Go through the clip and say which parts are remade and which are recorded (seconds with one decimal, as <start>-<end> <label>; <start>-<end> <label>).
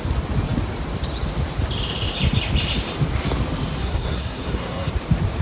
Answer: 0.0-3.8 recorded; 3.8-4.9 remade; 4.9-5.4 recorded